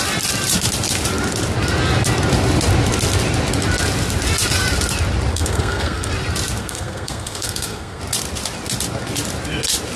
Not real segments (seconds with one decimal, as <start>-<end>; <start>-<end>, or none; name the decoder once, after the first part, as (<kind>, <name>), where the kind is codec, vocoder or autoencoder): 5.3-6.1 (codec, SNAC); 6.6-8.0